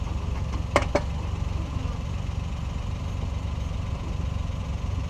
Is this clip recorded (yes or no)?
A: yes